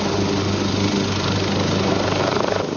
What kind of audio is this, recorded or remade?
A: recorded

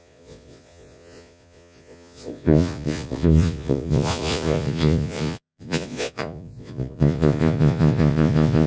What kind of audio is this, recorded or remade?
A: remade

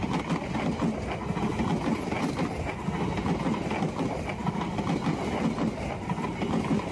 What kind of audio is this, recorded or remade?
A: recorded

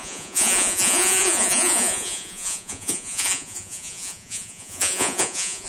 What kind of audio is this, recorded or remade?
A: remade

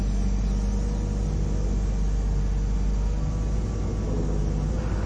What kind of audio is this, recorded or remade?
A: recorded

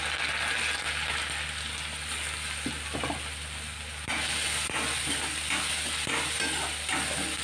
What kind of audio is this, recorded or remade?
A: recorded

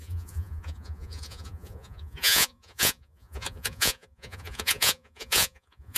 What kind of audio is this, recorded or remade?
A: remade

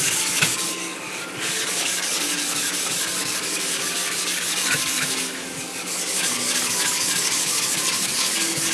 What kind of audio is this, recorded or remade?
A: remade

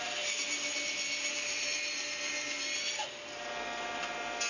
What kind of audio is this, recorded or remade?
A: recorded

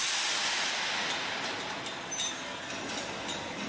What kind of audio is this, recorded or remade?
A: recorded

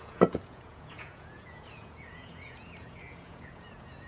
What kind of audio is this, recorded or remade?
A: remade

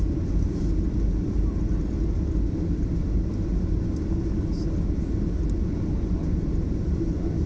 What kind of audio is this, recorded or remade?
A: recorded